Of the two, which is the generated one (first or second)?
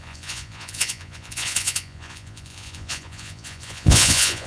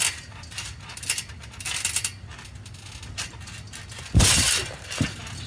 first